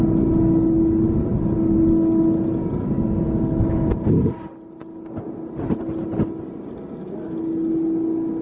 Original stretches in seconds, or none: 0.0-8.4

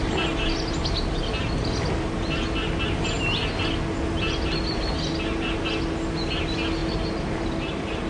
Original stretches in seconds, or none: 0.0-8.1

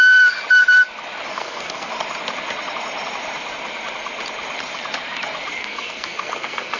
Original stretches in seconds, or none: 0.0-1.3; 1.9-5.6

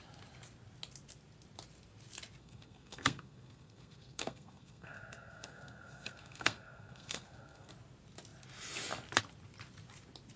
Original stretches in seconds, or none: 0.0-2.4; 7.7-10.4

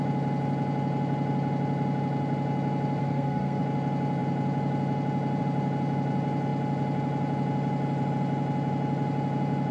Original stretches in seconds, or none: 0.0-3.0; 3.6-9.7

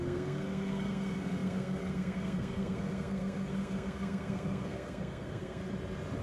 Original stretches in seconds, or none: 5.6-6.2

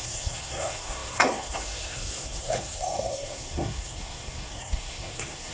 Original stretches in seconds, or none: none

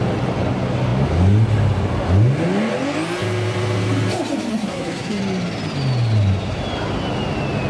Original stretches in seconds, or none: 0.0-4.5; 5.2-7.7